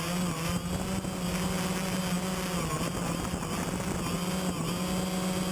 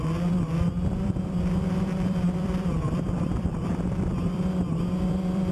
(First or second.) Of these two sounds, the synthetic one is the second